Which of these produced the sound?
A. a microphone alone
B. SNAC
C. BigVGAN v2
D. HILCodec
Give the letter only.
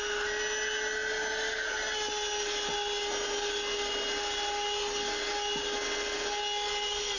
A